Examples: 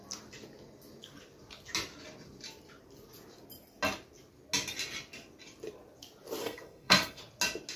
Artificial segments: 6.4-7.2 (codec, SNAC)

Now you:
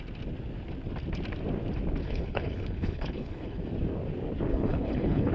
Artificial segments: 2.0-3.6 (codec, HILCodec); 4.5-5.3

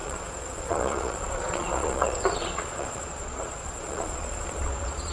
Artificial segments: 0.0-5.1 (vocoder, Vocos)

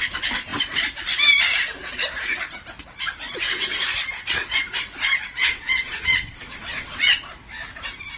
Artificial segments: 5.4-7.0 (vocoder, WaveNeXt)

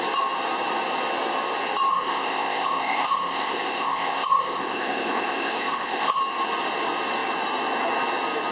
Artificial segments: 1.9-6.2 (codec, ZipCodec)

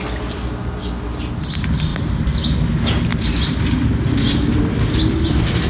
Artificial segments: none

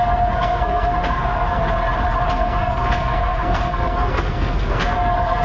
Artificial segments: 0.0-1.6 (codec, SNAC); 2.3-5.4

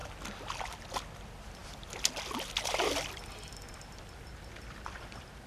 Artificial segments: none